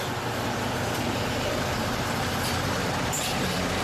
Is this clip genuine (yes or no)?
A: no